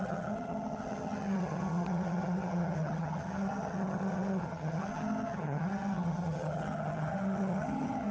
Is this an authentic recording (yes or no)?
no